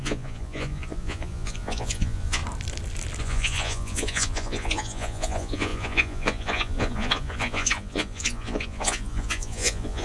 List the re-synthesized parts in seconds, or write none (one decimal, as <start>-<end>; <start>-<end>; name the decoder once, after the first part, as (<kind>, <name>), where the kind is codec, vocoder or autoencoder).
0.0-2.4 (vocoder, Vocos); 3.2-10.0